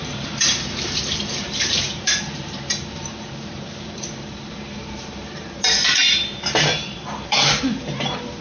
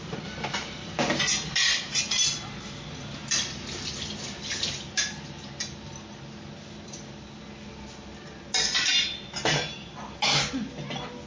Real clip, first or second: second